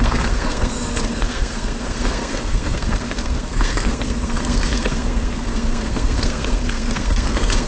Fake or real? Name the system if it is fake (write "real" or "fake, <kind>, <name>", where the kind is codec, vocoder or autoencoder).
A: fake, codec, SNAC